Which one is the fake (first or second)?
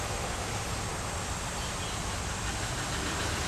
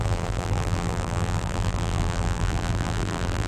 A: second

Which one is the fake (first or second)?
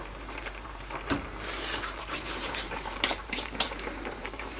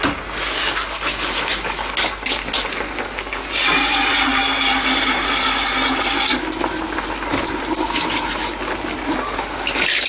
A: first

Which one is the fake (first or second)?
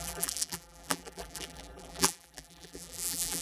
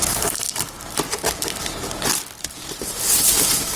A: first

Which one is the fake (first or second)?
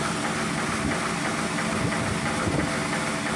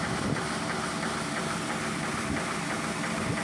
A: second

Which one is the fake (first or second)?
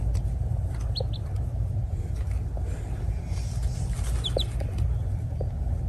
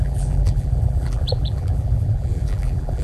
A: second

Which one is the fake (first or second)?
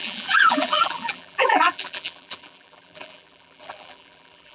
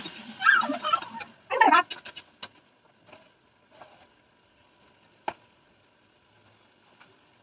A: first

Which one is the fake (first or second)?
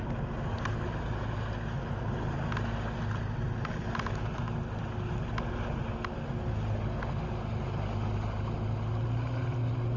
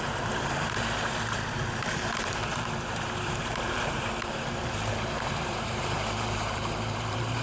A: second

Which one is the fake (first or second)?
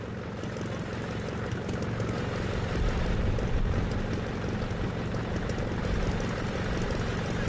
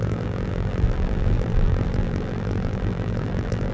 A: second